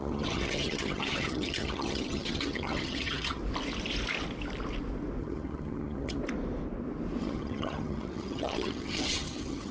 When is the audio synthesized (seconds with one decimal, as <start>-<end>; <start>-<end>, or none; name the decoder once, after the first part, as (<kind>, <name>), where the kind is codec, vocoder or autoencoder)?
0.0-3.4 (vocoder, HiFi-GAN); 5.2-6.2; 7.2-9.7